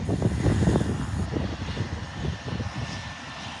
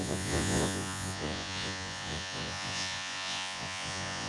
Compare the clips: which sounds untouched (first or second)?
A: first